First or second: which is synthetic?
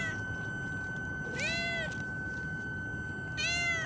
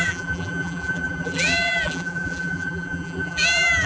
second